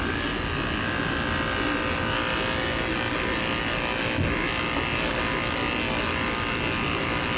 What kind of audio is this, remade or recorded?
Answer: recorded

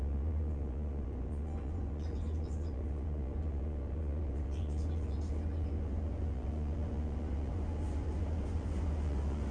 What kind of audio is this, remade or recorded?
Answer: remade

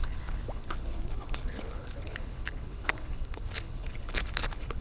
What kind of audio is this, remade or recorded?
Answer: remade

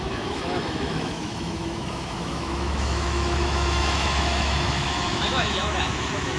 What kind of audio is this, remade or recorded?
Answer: remade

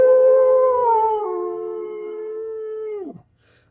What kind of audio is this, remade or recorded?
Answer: remade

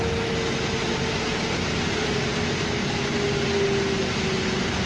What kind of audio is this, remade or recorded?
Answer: recorded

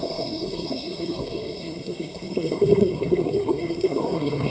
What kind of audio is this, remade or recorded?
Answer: remade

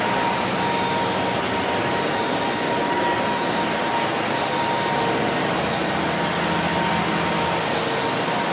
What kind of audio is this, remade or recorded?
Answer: recorded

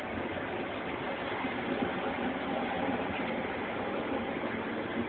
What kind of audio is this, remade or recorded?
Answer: recorded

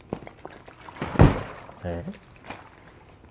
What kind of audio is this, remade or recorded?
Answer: recorded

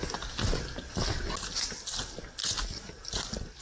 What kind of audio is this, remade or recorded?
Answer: recorded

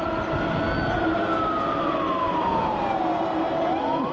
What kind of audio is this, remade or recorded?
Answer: recorded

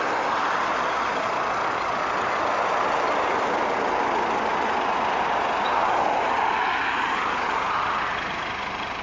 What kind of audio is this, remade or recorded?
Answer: recorded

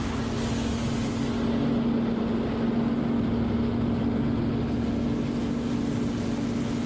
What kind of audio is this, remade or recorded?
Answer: recorded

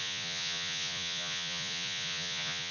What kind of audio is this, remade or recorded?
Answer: remade